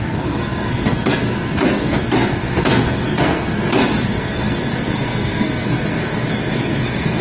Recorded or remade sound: remade